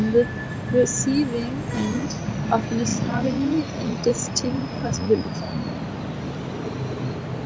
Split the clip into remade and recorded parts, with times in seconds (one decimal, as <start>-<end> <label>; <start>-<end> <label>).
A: 0.0-1.9 recorded; 1.9-2.4 remade; 2.4-2.9 recorded; 2.9-5.8 remade; 5.8-7.5 recorded